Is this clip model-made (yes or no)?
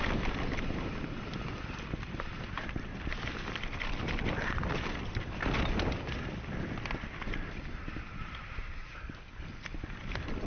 no